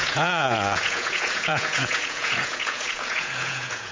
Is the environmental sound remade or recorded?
remade